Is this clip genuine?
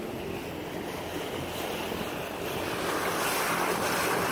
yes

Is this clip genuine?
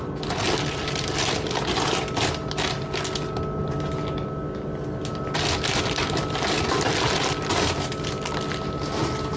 yes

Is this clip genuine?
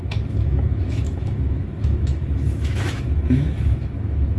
no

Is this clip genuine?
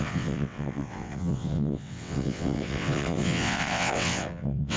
no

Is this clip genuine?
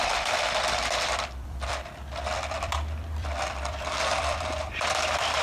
no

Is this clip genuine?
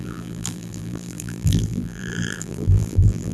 no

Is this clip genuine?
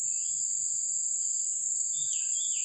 yes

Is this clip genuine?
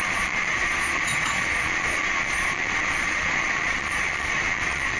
no